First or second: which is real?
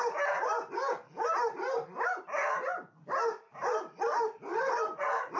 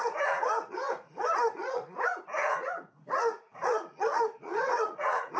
first